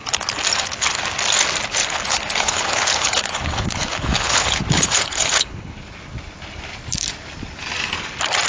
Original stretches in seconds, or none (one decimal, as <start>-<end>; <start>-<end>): 0.0-1.8; 5.8-8.5